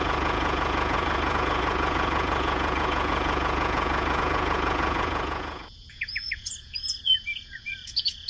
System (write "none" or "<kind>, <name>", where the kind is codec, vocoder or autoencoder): vocoder, Vocos